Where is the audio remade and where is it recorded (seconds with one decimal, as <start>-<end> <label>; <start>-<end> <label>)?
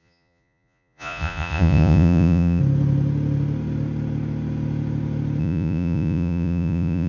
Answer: 0.0-2.6 remade; 2.6-5.4 recorded; 5.4-7.1 remade